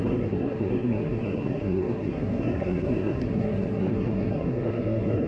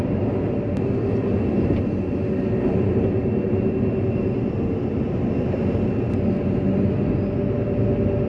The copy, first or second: first